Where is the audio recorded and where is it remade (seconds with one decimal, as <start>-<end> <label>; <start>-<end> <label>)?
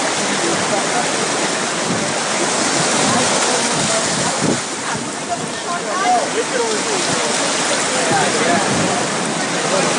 0.0-10.0 recorded